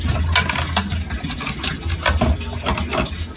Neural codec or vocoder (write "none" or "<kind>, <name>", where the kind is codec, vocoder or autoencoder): none